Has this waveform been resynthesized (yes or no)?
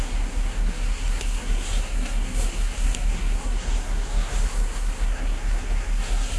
yes